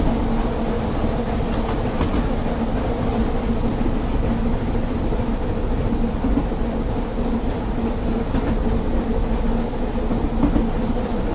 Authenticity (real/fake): real